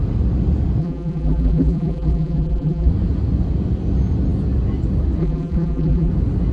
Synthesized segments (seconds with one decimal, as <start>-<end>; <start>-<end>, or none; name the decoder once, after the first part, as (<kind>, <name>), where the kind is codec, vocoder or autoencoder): 0.8-2.9 (vocoder, BigVGAN v2); 5.2-6.1